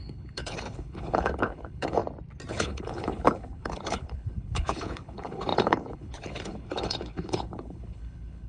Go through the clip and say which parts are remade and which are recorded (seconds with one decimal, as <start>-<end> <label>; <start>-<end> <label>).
0.0-2.0 remade; 2.0-2.5 recorded; 2.5-8.5 remade